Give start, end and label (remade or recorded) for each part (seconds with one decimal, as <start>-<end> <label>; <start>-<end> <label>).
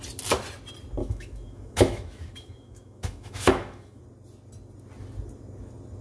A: 0.0-1.0 recorded; 1.0-4.0 remade; 4.0-6.0 recorded